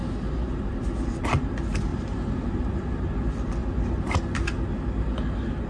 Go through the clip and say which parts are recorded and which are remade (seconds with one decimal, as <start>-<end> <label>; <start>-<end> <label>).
0.0-1.9 recorded; 1.9-2.6 remade; 2.6-3.6 recorded; 3.6-4.2 remade; 4.2-5.7 recorded